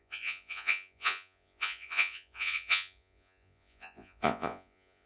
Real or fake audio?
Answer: fake